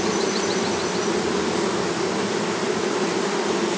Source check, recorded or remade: recorded